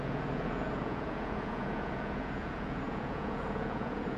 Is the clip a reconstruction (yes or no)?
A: yes